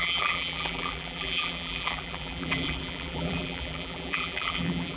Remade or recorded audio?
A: remade